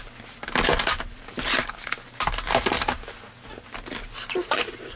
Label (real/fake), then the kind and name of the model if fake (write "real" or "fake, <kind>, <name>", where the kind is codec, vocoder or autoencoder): real